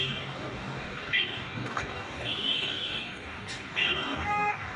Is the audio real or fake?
fake